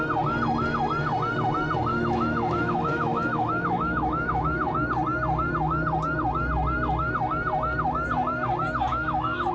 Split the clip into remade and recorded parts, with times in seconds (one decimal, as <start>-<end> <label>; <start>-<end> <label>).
0.0-1.9 recorded; 1.9-4.7 remade; 4.7-8.9 recorded; 8.9-9.5 remade